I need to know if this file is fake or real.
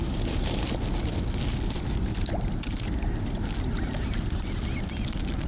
real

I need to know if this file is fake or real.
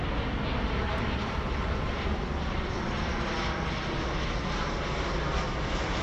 real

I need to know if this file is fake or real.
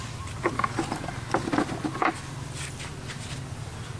real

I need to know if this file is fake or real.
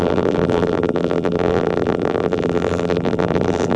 fake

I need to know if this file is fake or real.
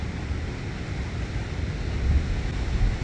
real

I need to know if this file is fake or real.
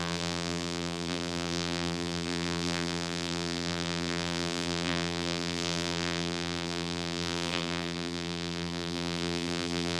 fake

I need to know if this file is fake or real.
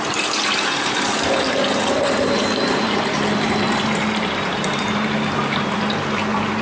fake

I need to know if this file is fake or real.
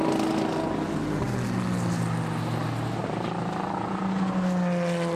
real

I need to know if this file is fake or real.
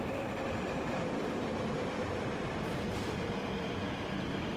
fake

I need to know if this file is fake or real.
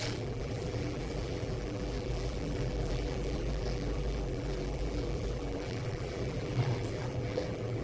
fake